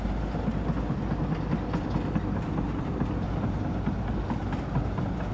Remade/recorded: recorded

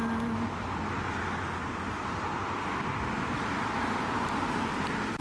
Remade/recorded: recorded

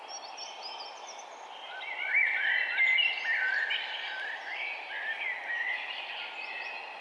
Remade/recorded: recorded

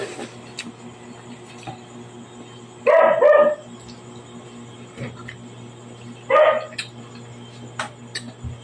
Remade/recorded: recorded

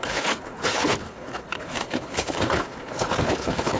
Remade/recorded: remade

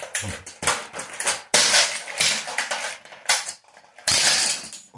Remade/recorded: recorded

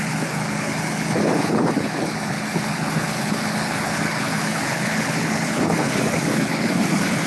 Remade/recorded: remade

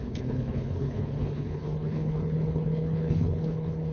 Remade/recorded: remade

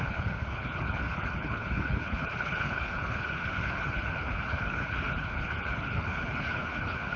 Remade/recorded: remade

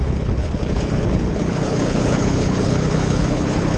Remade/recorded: remade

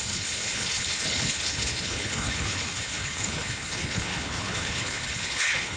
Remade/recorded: remade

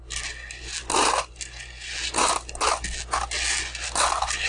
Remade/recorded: recorded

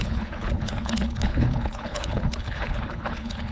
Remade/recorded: remade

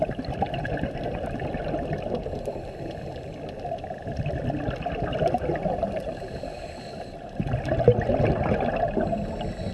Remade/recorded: recorded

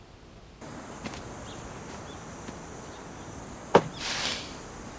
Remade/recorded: recorded